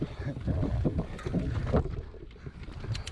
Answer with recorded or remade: recorded